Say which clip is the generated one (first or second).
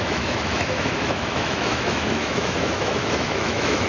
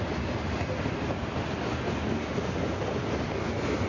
first